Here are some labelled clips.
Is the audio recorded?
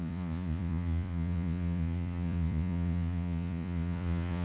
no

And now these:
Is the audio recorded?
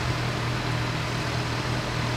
yes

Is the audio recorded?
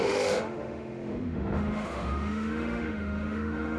no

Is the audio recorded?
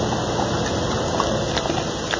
yes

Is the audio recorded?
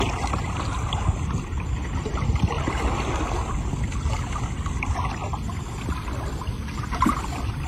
yes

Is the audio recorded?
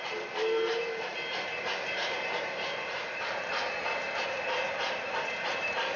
no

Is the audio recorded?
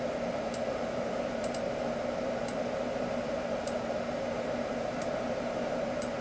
no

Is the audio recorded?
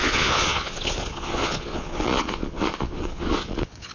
no